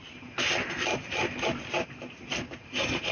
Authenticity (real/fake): real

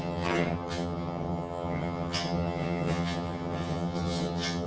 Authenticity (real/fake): fake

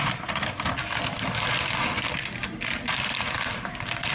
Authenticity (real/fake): real